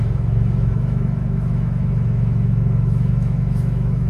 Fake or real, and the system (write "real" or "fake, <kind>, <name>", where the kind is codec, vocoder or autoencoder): fake, autoencoder, DAC-VAE